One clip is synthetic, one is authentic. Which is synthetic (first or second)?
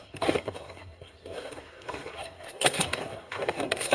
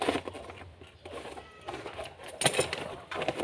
first